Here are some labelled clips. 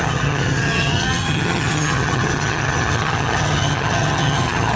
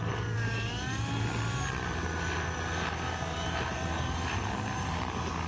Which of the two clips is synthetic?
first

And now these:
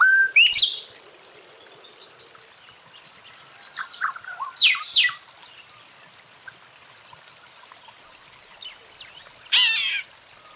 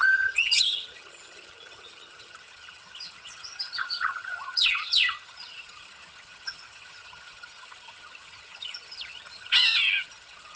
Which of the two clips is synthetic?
second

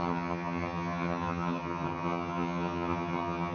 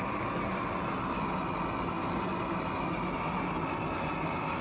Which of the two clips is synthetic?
first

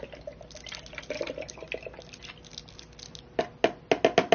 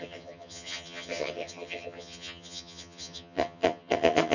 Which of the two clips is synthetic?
second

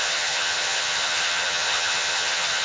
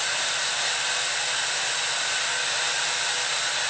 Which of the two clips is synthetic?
first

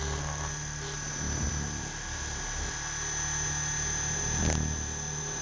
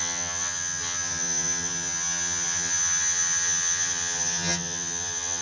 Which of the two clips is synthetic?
second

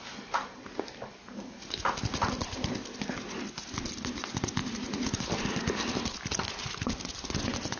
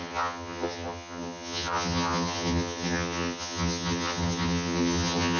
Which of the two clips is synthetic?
second